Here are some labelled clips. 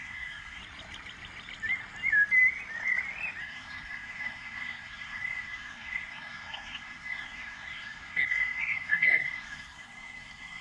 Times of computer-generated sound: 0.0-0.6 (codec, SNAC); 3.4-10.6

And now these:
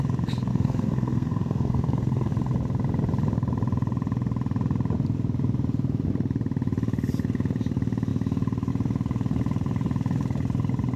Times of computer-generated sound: 0.5-2.3 (codec, SNAC)

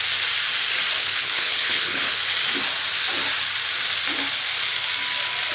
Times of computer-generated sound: 1.0-2.2 (codec, HILCodec)

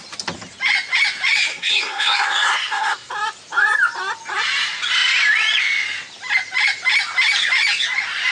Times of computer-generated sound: 1.5-3.1 (codec, SNAC)

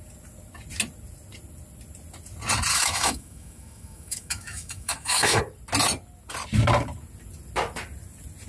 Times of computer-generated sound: 2.7-5.4 (autoencoder, DAC-VAE)

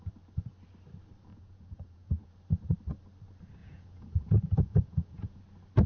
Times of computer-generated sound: 1.3-2.3 (vocoder, Vocos); 3.6-5.4

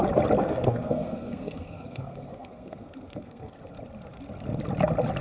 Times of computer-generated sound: 0.4-3.5 (codec, SNAC)

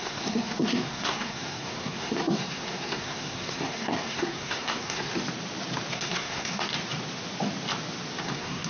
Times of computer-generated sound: 0.0-5.1 (codec, SNAC); 5.9-6.7; 8.2-8.7